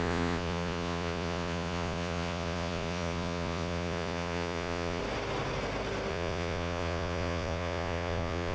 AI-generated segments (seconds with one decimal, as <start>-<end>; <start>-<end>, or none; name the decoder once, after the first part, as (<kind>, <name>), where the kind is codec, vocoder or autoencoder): 0.0-5.0 (vocoder, Vocos); 6.1-8.5